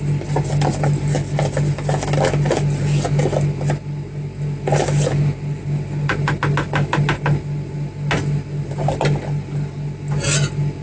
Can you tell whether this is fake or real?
real